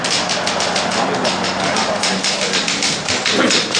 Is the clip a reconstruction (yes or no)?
no